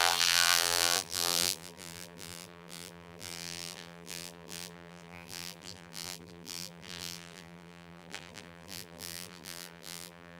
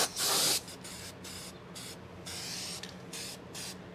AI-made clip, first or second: first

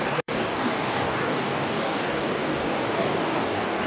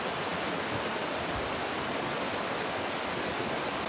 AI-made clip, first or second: first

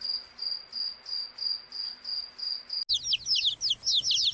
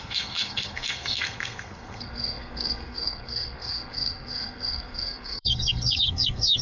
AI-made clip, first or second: second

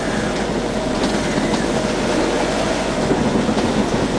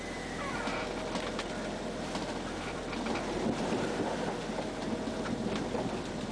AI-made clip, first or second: first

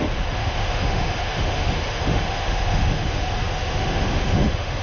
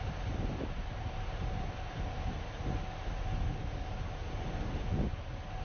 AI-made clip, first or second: first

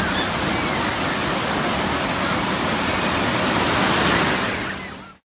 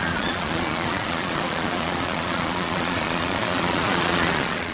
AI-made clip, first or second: second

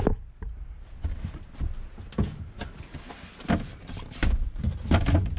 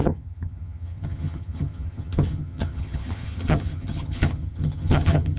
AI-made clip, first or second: second